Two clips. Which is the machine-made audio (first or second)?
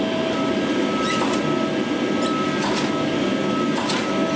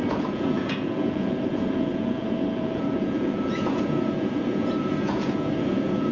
second